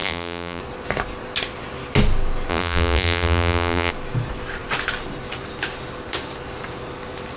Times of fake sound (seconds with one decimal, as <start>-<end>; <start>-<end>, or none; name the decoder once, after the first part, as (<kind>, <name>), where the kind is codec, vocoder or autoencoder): 0.0-0.6 (vocoder, BigVGAN v2); 2.5-3.9